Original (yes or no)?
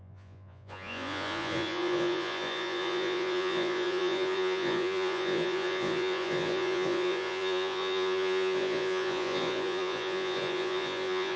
no